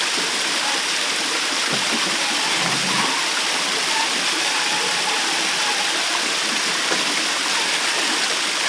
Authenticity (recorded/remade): recorded